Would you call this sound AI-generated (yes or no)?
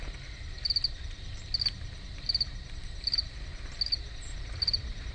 no